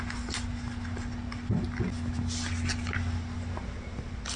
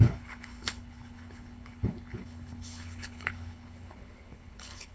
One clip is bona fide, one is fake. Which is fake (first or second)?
second